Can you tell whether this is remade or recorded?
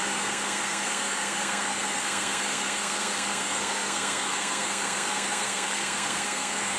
remade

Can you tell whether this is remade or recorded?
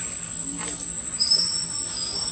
recorded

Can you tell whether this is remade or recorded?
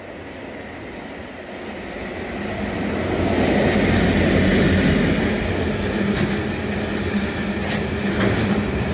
recorded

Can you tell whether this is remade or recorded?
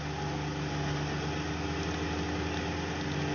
recorded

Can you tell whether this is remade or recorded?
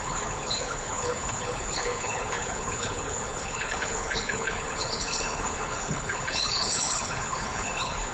remade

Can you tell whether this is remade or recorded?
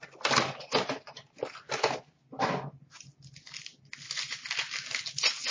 recorded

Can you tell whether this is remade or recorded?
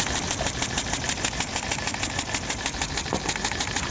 recorded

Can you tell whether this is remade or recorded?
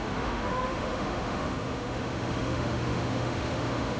remade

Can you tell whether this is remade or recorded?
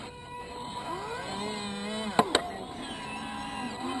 recorded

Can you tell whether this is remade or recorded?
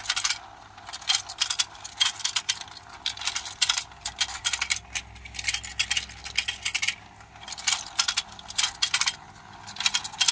recorded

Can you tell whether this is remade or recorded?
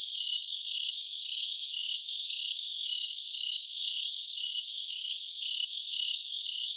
remade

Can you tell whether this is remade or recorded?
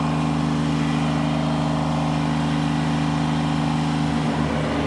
recorded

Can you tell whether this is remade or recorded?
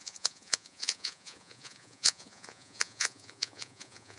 remade